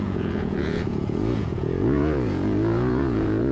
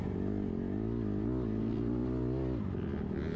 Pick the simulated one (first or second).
first